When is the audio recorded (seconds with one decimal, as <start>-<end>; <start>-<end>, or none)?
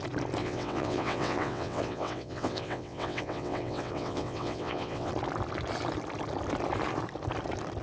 0.0-0.4; 5.1-7.8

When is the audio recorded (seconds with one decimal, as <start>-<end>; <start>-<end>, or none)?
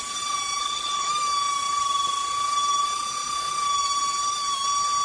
0.0-0.6; 1.1-5.0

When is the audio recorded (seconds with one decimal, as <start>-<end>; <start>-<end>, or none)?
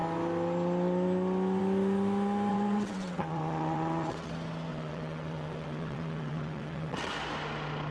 0.0-2.5; 4.3-4.7; 7.1-7.9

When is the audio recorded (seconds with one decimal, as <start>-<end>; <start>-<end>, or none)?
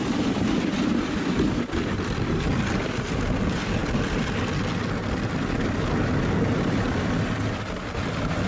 0.0-8.5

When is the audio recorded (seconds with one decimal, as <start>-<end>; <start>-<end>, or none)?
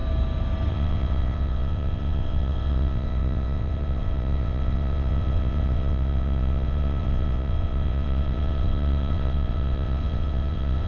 0.0-0.7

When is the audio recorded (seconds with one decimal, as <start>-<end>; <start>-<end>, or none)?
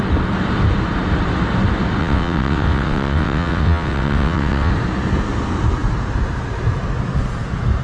0.0-2.0; 4.7-7.8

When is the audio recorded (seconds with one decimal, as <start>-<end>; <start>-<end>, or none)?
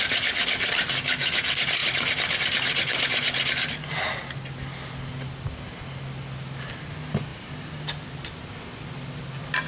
0.0-9.7